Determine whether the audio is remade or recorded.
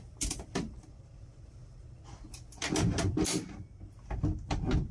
recorded